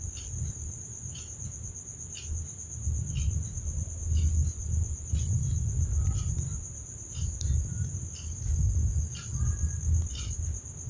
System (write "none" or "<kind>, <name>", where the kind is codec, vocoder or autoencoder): none